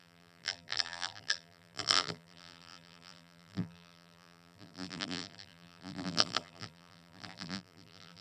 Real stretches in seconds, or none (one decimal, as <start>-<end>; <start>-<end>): none